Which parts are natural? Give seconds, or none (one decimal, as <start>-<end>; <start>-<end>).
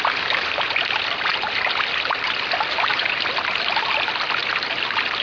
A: 0.0-5.2